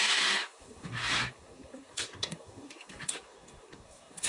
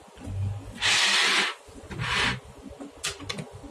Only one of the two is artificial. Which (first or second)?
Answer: first